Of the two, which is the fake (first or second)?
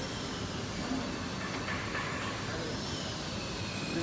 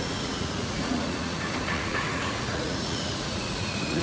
second